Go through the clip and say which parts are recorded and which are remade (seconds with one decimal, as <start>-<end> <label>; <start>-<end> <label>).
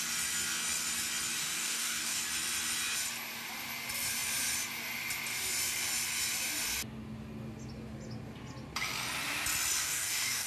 0.0-1.4 recorded; 1.4-2.2 remade; 2.2-9.8 recorded; 9.8-10.5 remade